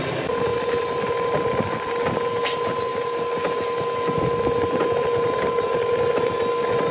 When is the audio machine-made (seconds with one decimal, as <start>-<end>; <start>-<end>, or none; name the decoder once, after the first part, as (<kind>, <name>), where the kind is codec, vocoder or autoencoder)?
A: none